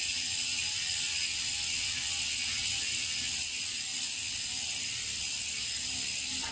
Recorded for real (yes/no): yes